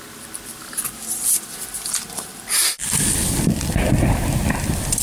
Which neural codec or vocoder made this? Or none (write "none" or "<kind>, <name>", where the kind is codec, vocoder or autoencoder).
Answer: vocoder, BigVGAN v2